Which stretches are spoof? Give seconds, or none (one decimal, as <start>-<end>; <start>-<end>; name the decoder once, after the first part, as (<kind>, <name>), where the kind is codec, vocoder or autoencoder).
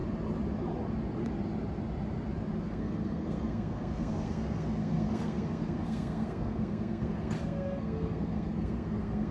2.6-9.3 (codec, SNAC)